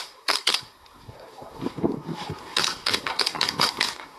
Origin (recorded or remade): remade